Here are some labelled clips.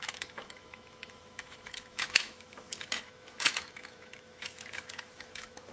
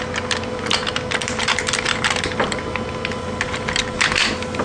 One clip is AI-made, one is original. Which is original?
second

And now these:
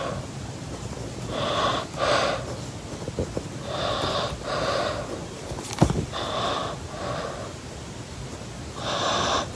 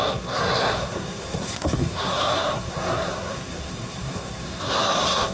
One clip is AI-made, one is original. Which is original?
first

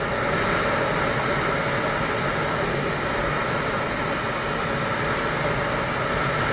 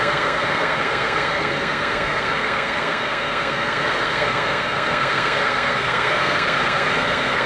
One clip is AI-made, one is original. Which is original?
first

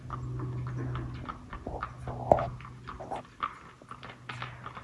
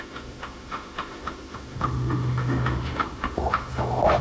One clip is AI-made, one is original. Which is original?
first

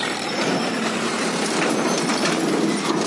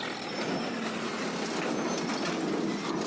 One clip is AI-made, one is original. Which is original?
second